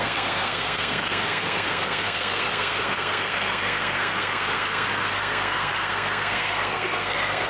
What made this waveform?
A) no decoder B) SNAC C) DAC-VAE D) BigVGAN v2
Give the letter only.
B